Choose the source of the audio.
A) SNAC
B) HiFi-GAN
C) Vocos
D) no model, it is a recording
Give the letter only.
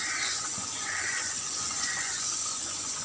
C